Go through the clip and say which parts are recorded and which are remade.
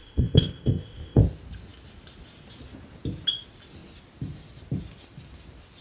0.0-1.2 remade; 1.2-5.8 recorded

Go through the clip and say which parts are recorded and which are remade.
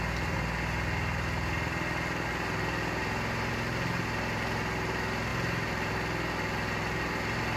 0.0-7.6 recorded